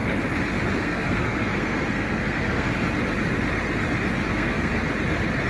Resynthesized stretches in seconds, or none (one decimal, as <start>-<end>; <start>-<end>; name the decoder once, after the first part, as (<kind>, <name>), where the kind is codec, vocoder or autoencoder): 0.8-2.7 (codec, SNAC); 4.3-4.7